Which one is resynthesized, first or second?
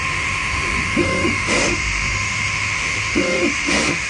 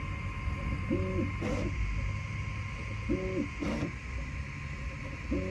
first